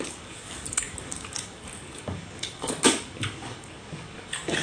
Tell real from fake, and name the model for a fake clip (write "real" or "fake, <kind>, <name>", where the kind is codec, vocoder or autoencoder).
fake, codec, DAC